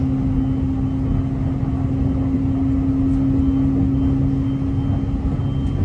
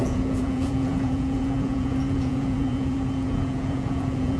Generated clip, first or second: second